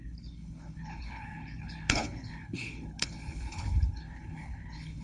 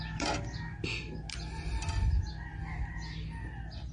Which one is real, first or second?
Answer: second